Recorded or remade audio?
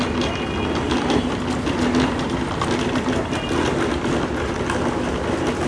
recorded